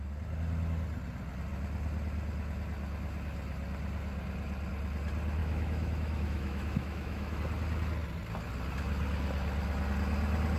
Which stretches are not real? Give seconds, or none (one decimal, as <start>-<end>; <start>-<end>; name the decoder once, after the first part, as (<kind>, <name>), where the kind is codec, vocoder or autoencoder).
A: 5.4-7.4 (autoencoder, DAC-VAE)